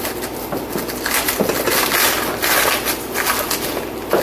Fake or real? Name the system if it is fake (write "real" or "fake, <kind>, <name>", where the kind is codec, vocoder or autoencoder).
real